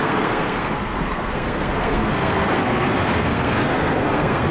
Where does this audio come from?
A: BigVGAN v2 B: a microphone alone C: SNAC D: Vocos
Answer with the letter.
C